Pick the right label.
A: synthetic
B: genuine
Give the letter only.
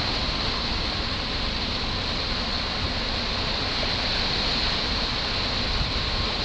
B